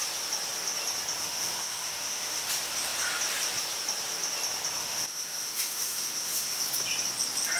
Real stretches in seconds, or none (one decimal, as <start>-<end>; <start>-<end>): 0.0-1.2; 2.5-4.8; 6.6-7.6